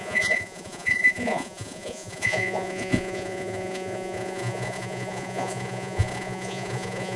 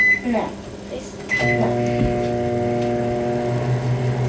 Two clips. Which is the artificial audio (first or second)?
first